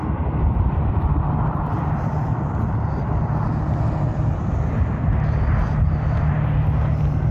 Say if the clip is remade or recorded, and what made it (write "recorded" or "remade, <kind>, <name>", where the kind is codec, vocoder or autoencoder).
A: recorded